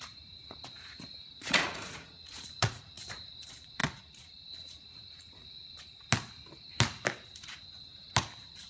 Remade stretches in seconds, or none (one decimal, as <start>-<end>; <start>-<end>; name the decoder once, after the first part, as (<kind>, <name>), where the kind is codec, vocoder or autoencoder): 0.0-3.8 (vocoder, Vocos); 4.5-5.6